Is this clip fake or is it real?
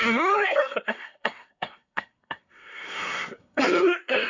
fake